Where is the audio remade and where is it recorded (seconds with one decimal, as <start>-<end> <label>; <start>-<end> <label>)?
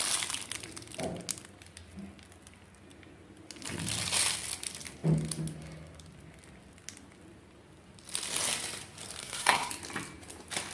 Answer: 0.0-9.2 recorded; 9.2-9.7 remade; 9.7-10.7 recorded